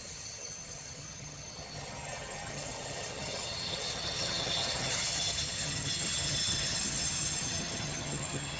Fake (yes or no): yes